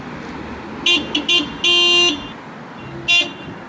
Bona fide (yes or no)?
yes